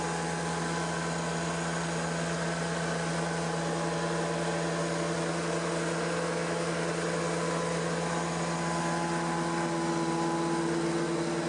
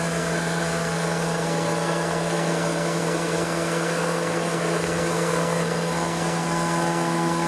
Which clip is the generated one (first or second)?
second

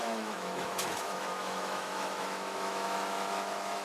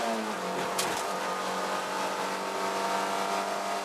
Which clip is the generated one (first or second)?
first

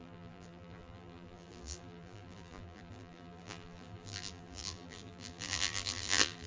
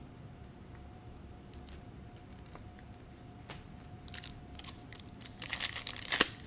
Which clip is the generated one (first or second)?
first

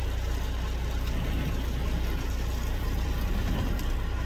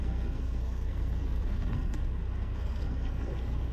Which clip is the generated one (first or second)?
second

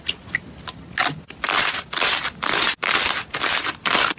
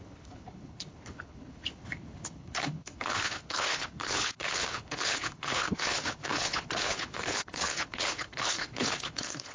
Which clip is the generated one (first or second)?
second